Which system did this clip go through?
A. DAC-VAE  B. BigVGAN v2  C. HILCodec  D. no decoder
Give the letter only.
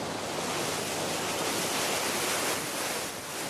D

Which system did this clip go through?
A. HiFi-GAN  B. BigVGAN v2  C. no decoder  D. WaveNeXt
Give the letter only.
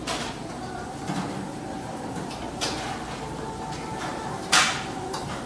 B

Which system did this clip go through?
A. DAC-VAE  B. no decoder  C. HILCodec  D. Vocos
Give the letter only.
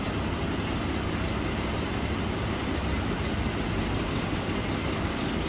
B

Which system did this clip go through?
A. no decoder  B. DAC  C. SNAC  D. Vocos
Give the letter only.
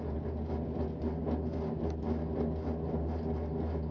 A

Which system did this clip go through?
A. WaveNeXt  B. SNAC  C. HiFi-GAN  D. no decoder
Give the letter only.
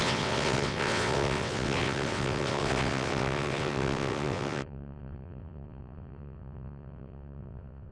A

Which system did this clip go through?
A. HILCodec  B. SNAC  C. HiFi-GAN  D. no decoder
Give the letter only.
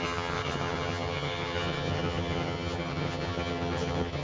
C